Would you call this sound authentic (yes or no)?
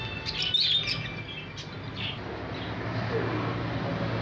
yes